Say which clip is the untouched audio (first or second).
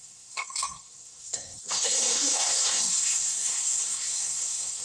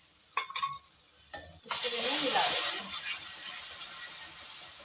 second